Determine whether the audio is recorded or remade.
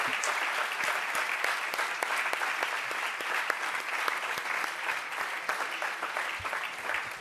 recorded